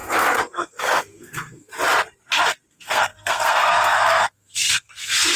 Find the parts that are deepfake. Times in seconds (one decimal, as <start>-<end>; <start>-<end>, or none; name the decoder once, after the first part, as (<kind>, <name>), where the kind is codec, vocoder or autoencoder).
0.0-1.7 (codec, SNAC); 2.7-5.4